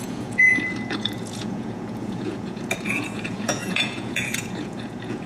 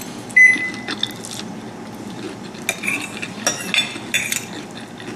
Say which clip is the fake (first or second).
first